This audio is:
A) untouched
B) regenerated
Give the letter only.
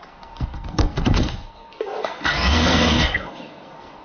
B